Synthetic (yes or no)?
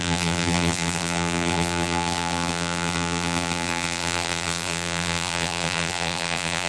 yes